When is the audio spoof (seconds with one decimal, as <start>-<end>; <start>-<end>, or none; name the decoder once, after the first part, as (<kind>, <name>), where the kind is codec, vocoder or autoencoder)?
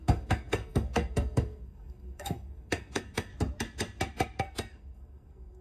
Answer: 0.0-3.3 (codec, SNAC); 4.4-5.6